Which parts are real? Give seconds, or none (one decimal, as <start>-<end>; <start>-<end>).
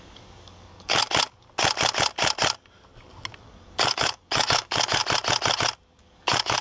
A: 1.0-3.4; 5.0-6.0